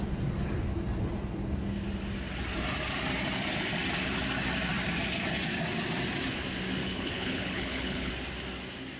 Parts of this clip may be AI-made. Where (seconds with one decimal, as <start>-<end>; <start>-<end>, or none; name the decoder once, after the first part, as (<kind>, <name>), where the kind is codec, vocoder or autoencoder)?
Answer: 6.8-8.1 (codec, HILCodec)